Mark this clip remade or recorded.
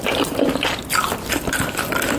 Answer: remade